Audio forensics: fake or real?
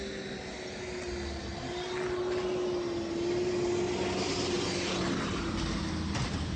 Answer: real